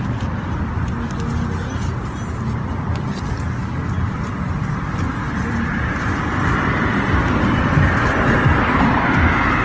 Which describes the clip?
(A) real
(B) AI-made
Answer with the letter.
A